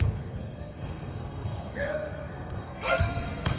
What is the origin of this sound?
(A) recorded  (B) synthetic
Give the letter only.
B